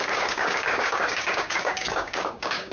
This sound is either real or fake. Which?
fake